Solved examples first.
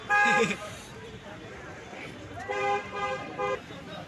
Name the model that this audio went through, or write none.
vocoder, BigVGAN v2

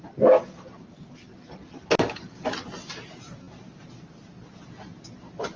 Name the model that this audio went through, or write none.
none